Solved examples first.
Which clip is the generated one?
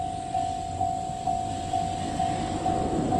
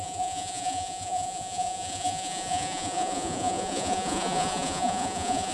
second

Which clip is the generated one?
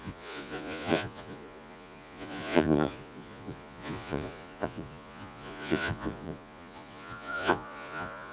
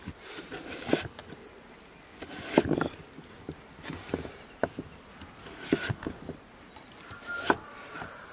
first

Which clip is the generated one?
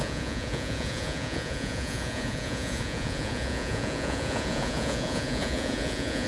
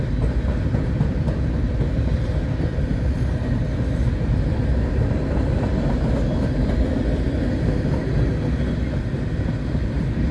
first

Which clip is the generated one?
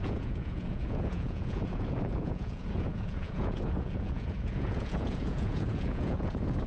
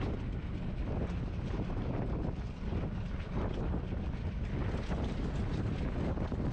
first